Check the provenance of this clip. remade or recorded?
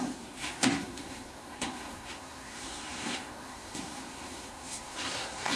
remade